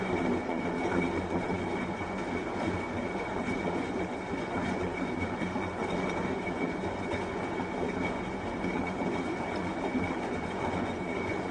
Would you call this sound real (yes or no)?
no